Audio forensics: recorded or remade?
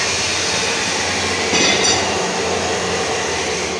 recorded